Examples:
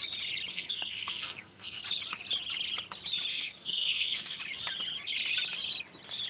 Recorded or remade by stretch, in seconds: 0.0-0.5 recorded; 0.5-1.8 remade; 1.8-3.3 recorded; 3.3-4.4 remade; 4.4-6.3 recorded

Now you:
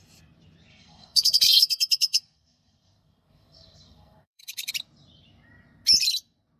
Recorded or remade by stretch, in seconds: 0.0-0.7 recorded; 0.7-4.7 remade; 4.7-6.6 recorded

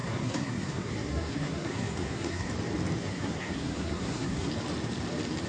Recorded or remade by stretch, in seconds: 0.0-2.5 remade; 2.5-3.0 recorded; 3.0-4.5 remade; 4.5-5.5 recorded